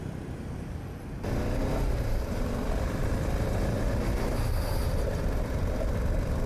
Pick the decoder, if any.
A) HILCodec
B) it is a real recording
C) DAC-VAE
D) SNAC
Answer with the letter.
B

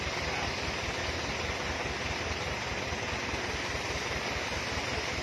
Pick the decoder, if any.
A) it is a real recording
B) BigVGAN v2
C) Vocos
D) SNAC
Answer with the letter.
A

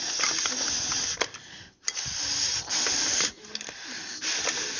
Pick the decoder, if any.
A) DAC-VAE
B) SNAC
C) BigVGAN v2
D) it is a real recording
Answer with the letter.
D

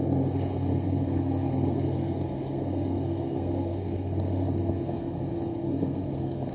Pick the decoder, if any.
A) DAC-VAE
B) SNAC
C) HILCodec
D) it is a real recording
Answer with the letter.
B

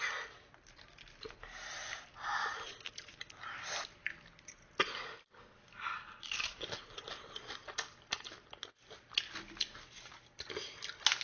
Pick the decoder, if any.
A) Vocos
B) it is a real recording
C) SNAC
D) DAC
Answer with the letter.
B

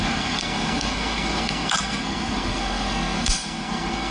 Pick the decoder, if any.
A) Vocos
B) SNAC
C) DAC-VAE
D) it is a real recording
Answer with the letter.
B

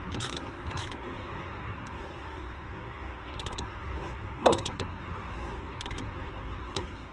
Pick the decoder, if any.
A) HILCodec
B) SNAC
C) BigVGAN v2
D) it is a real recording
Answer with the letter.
B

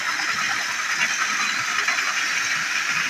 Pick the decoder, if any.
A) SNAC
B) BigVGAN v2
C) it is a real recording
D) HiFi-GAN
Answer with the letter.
C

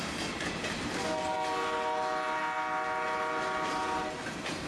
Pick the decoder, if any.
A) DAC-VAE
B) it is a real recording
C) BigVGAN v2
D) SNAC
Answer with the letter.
B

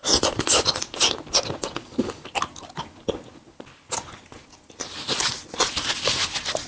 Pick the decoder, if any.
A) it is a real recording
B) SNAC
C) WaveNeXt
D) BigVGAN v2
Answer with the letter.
A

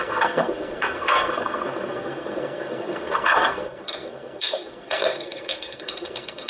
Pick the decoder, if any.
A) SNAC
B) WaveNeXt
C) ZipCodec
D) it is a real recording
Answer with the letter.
A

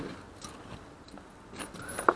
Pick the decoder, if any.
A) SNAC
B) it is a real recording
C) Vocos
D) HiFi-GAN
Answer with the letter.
B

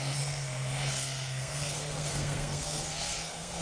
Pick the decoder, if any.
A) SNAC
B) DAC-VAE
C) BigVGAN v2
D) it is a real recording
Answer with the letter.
A